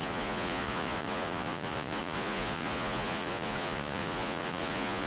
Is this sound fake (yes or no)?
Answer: yes